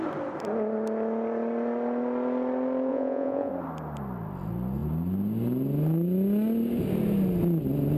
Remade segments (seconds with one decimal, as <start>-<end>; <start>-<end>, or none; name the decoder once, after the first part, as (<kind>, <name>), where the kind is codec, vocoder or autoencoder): 2.9-3.5 (vocoder, Vocos)